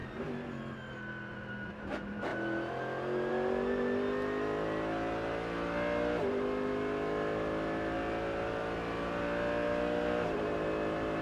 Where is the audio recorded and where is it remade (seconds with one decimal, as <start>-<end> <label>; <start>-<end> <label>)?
0.0-11.2 recorded